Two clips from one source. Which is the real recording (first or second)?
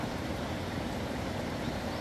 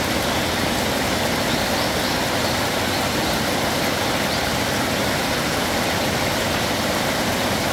second